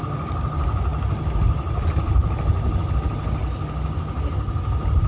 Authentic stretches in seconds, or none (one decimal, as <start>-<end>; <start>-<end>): 0.0-5.1